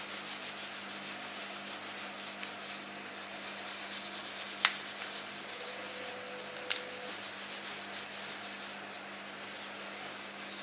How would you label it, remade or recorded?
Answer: recorded